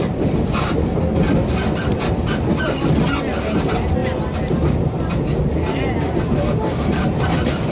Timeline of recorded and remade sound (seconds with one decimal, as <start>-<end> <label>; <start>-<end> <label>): 0.0-7.7 recorded